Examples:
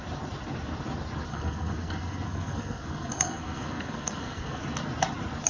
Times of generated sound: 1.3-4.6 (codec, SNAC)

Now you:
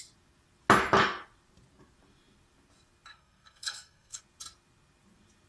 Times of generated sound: 3.1-4.2 (codec, SNAC)